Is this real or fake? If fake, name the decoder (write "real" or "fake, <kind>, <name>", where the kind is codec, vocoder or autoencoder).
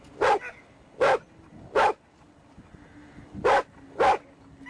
real